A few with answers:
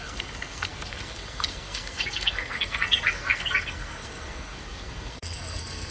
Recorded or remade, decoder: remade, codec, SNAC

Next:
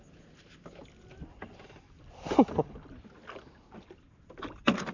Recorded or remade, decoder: recorded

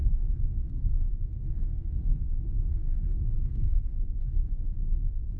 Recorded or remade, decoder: remade, codec, SNAC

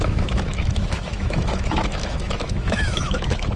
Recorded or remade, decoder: remade, autoencoder, DAC-VAE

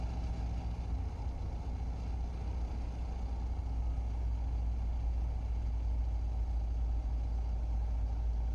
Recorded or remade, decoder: recorded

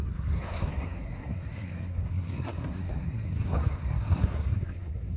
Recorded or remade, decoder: remade, codec, SNAC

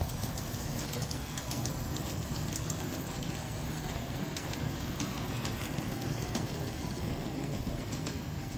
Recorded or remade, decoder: remade, codec, SNAC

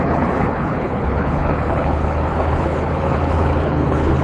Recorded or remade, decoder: remade, codec, HILCodec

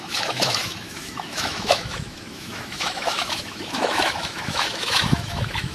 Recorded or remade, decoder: remade, autoencoder, DAC-VAE